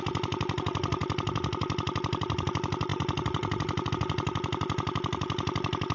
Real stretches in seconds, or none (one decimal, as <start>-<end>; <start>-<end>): 0.0-5.9